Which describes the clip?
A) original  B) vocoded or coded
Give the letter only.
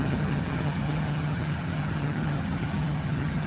B